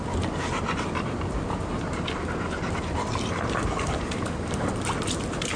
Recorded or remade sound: remade